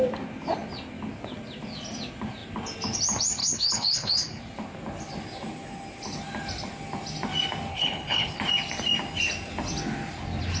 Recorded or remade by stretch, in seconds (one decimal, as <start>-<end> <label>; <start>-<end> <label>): 0.0-3.4 recorded; 3.4-4.4 remade; 4.4-7.7 recorded; 7.7-8.4 remade; 8.4-10.6 recorded